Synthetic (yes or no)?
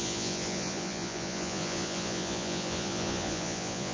yes